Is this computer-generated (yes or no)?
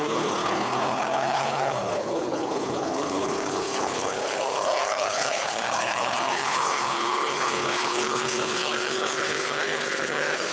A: yes